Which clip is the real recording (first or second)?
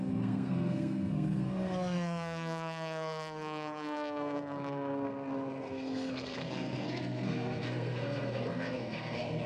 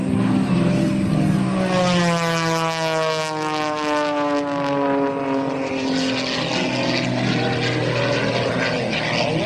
second